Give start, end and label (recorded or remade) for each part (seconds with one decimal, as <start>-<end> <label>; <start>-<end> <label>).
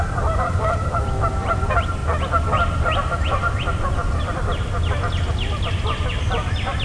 0.0-2.0 remade; 2.0-6.1 recorded; 6.1-6.8 remade